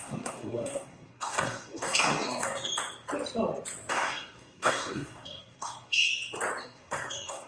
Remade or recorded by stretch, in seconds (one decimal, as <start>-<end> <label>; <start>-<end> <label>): 0.0-2.7 remade; 2.7-3.9 recorded; 3.9-6.1 remade; 6.1-6.6 recorded; 6.6-7.5 remade

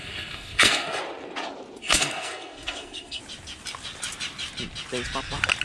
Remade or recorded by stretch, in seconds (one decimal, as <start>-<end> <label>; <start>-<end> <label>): 0.0-1.0 remade; 1.0-1.8 recorded; 1.8-3.2 remade; 3.2-5.6 recorded

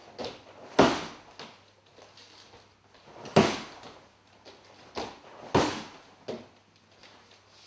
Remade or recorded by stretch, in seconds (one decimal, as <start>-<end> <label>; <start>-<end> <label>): 0.0-7.7 recorded

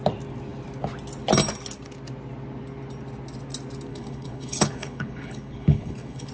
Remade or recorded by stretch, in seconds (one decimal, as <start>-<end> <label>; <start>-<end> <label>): 0.0-3.9 recorded; 3.9-6.3 remade

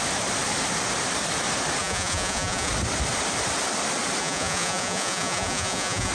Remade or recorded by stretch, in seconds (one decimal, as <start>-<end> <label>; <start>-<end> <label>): 0.0-1.8 recorded; 1.8-2.7 remade; 2.7-4.2 recorded; 4.2-6.1 remade